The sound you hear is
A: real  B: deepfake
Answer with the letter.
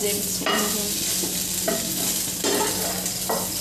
B